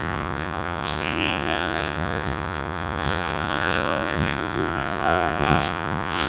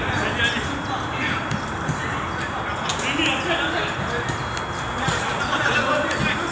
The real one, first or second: second